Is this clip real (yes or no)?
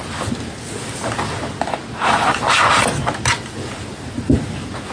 yes